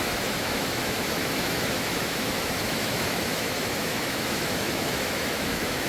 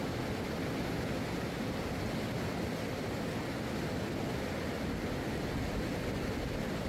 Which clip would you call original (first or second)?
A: second